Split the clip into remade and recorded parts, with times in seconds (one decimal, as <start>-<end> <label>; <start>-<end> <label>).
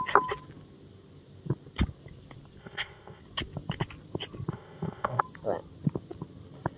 0.0-2.6 recorded; 2.6-3.2 remade; 3.2-4.5 recorded; 4.5-5.2 remade; 5.2-6.8 recorded